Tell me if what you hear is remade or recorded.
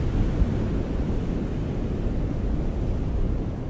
recorded